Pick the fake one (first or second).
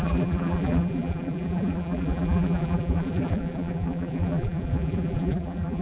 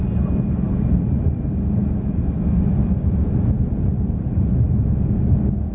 first